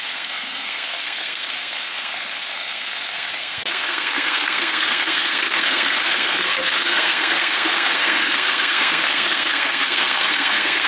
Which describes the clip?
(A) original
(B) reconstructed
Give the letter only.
B